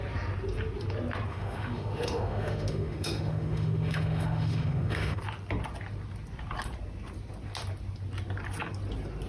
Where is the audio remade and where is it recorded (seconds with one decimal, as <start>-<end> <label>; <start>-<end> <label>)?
0.0-1.3 recorded; 1.3-5.2 remade; 5.2-9.3 recorded